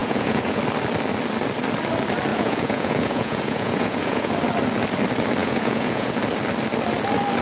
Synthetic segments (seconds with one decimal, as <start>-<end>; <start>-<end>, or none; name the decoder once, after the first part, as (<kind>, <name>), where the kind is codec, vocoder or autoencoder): 0.0-0.6 (vocoder, Vocos); 2.3-4.3; 5.4-6.2